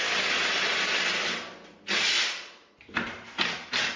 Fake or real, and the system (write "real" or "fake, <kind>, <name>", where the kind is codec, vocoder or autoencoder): real